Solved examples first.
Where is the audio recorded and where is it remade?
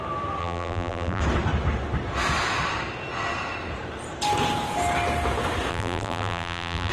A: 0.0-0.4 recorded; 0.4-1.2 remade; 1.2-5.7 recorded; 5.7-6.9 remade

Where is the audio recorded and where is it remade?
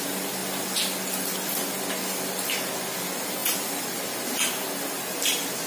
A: 0.0-5.7 recorded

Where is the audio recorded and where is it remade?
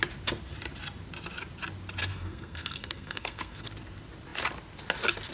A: 0.0-2.0 recorded; 2.0-3.7 remade; 3.7-5.3 recorded